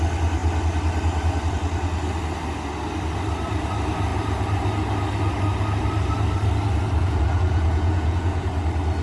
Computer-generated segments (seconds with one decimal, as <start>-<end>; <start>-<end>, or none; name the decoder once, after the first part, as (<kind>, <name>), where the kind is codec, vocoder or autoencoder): 7.0-8.5 (vocoder, Vocos)

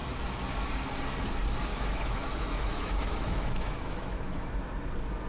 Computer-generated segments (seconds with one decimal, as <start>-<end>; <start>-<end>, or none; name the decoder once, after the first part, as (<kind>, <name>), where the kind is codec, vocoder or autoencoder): 1.7-4.5 (autoencoder, DAC-VAE)

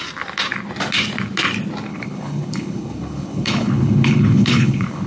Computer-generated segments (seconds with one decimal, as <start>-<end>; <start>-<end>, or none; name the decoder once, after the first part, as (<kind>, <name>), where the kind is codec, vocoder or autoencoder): 1.9-5.1 (codec, HILCodec)

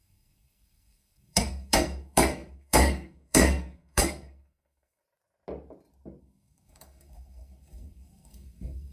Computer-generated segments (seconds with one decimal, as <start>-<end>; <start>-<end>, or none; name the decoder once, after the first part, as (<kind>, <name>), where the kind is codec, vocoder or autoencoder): 0.0-5.0 (codec, SNAC); 6.2-8.9